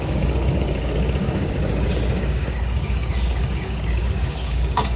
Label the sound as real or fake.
fake